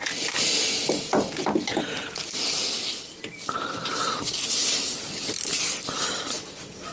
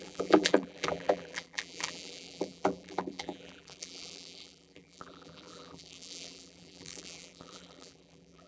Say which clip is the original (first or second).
first